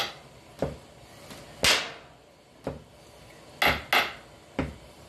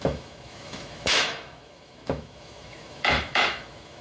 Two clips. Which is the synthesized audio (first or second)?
second